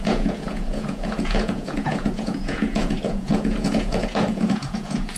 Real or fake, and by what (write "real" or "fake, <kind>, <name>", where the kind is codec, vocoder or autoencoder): fake, vocoder, Vocos